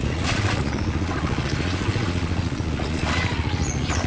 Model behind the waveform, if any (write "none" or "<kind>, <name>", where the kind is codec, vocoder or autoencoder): vocoder, Vocos